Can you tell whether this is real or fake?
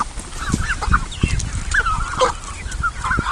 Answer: real